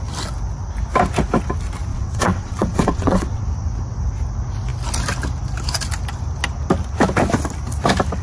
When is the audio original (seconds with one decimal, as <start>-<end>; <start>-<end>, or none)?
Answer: 0.0-1.9; 3.4-8.2